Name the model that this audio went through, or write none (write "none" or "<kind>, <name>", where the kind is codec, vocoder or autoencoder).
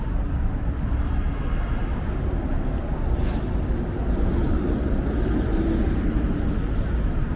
none